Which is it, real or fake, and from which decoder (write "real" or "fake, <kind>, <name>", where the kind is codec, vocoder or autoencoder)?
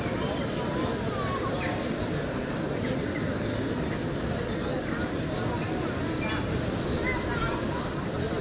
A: real